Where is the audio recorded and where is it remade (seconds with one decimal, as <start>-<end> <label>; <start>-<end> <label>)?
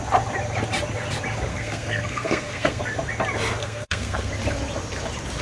0.0-1.5 recorded; 1.5-2.8 remade; 2.8-3.6 recorded; 3.6-4.3 remade; 4.3-5.4 recorded